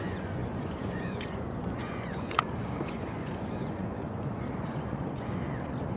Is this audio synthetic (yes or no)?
yes